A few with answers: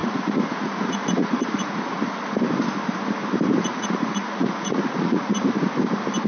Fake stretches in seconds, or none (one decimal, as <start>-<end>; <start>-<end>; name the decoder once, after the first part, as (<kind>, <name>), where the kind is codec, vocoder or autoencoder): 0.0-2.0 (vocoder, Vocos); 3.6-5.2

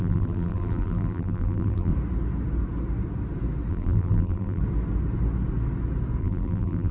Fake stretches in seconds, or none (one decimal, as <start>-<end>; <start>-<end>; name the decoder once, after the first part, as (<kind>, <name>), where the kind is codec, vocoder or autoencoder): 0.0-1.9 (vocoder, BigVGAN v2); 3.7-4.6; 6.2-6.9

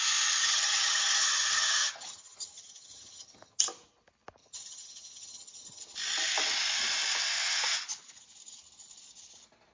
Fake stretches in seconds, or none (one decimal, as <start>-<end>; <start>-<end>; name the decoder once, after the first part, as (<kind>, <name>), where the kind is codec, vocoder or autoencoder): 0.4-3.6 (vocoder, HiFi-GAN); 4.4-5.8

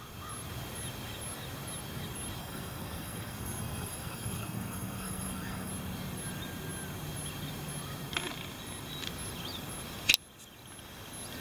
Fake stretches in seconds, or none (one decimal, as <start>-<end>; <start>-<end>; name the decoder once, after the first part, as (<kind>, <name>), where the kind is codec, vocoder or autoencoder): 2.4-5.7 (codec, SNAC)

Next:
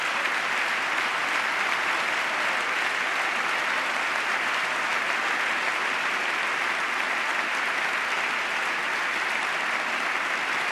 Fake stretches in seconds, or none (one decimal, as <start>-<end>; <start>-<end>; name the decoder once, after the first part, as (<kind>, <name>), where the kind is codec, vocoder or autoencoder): none

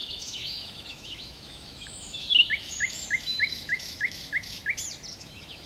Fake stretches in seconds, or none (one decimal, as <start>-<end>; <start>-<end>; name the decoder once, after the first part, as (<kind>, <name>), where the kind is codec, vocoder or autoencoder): 0.0-4.6 (autoencoder, DAC-VAE); 5.1-5.7

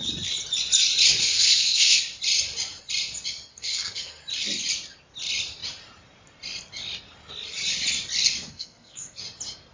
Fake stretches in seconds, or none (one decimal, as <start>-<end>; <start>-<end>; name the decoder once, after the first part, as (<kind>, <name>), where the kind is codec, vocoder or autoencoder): 1.2-2.0 (codec, SNAC); 3.5-4.2; 8.4-9.2